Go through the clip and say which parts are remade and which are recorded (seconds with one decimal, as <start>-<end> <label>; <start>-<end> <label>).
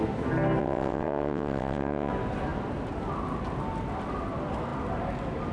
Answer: 0.0-0.6 recorded; 0.6-2.1 remade; 2.1-5.5 recorded